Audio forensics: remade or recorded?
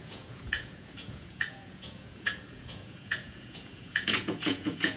remade